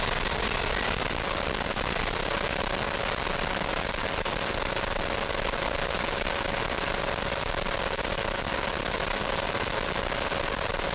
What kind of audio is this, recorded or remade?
recorded